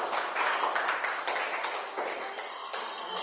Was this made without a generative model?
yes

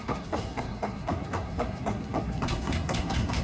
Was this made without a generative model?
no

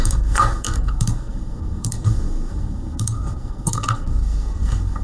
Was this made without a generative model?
no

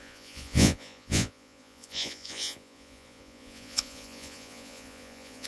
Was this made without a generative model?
no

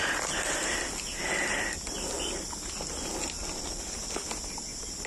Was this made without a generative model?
yes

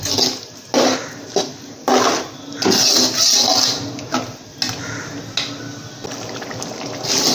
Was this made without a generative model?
yes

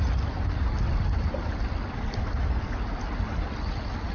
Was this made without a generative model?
yes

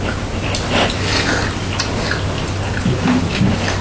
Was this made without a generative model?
yes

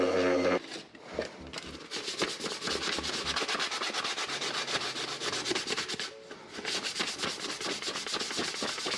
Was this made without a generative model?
yes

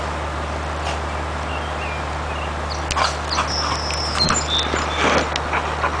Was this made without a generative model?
yes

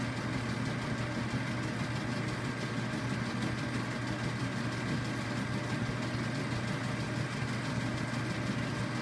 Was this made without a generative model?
yes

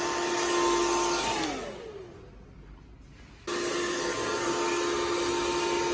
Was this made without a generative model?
yes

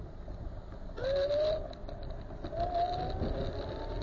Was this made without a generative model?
yes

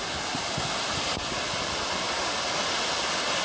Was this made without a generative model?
yes